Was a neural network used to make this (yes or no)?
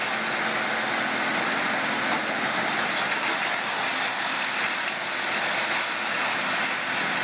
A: no